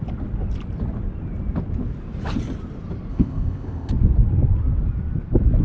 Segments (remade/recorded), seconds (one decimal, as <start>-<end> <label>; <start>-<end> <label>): 0.0-3.1 recorded; 3.1-3.9 remade; 3.9-5.6 recorded